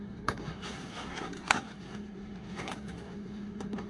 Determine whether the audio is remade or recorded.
remade